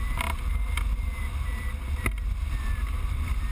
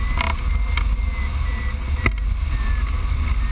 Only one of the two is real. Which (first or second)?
second